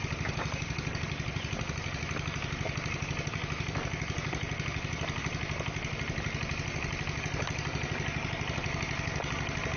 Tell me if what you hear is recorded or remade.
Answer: recorded